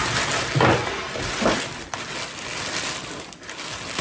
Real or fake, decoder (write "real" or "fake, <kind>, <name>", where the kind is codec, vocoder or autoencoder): real